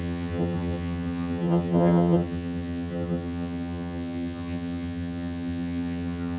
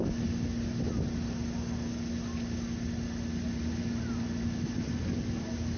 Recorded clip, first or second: second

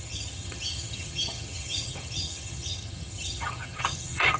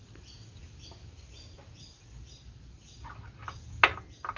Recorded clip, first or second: second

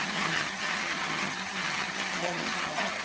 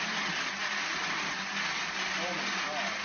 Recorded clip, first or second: second